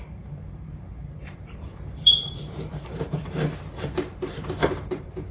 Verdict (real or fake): fake